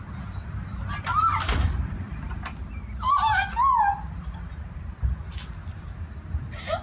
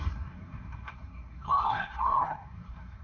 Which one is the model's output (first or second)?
second